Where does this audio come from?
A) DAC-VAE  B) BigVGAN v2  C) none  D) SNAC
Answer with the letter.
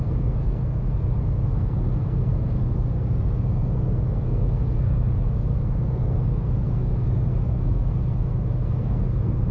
D